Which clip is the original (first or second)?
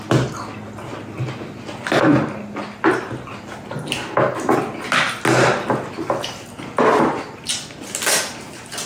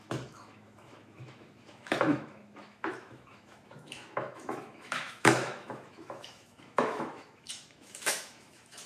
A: first